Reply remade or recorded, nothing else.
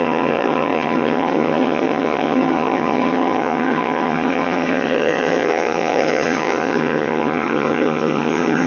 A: remade